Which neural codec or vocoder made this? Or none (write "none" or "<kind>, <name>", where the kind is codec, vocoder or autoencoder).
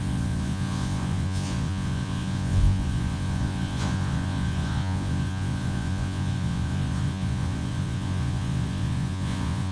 vocoder, Vocos